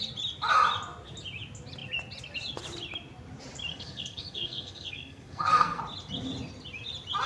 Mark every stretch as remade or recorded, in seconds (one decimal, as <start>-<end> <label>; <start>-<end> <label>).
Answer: 0.0-3.7 recorded; 3.7-5.8 remade; 5.8-7.3 recorded